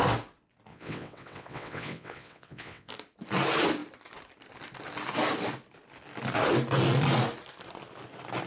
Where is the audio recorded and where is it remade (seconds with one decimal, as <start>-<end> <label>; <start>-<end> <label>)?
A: 0.0-0.7 recorded; 0.7-2.9 remade; 2.9-8.5 recorded